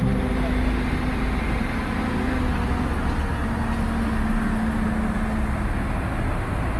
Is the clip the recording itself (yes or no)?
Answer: yes